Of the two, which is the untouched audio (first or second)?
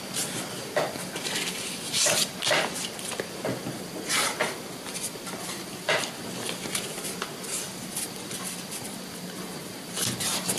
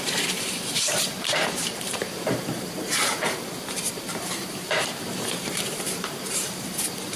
first